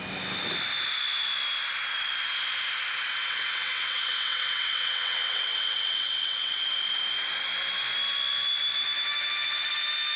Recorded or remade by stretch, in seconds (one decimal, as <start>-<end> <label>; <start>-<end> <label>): 0.0-3.1 recorded; 3.1-6.6 remade; 6.6-10.2 recorded